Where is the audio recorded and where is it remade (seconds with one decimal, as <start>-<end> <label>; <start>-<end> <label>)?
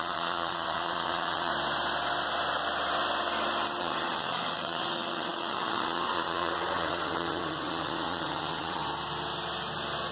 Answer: 0.0-1.5 remade; 1.5-3.8 recorded; 3.8-8.8 remade; 8.8-10.1 recorded